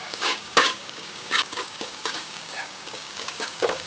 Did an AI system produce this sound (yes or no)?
yes